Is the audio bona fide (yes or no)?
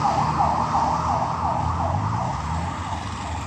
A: yes